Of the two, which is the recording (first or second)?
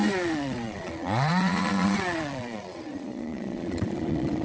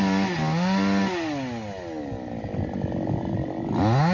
second